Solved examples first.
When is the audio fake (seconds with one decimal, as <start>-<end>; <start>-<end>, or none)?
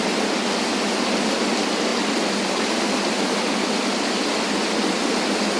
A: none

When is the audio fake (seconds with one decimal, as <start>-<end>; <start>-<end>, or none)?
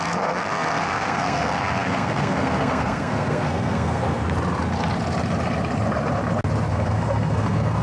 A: 0.0-4.2; 6.7-7.8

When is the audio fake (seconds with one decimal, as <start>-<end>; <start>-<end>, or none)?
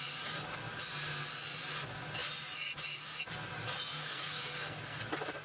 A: 4.0-5.0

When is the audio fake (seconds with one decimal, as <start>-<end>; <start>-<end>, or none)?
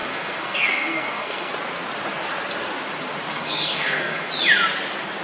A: 0.0-1.5; 3.3-4.3